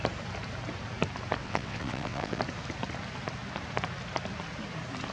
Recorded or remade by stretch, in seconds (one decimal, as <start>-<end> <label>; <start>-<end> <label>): 0.0-1.4 recorded; 1.4-2.4 remade; 2.4-5.1 recorded